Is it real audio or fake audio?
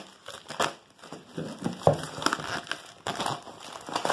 real